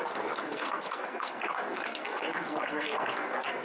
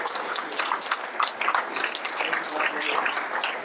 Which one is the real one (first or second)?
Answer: second